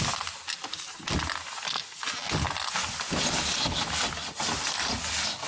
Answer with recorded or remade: recorded